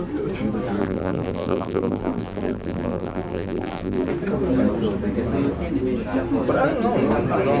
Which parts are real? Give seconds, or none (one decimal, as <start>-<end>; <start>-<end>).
0.0-0.8; 4.1-7.6